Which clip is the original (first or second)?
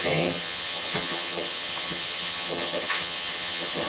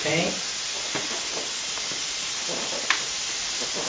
second